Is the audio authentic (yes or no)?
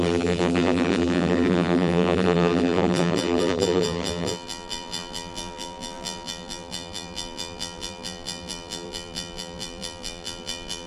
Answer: no